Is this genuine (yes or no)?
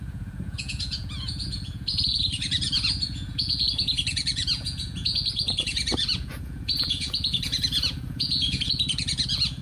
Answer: no